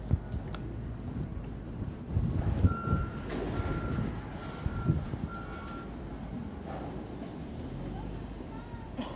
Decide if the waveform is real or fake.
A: real